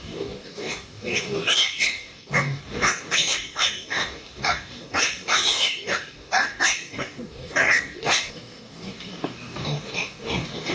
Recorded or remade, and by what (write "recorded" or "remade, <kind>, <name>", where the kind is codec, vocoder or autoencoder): remade, codec, DAC